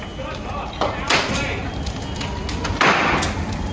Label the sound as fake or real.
real